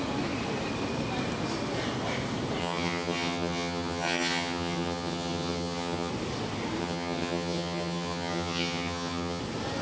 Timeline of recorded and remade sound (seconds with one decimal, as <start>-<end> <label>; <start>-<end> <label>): 0.0-2.6 recorded; 2.6-6.1 remade; 6.1-6.8 recorded; 6.8-9.4 remade; 9.4-9.8 recorded